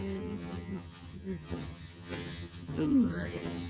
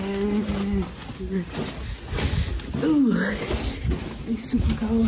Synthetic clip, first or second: first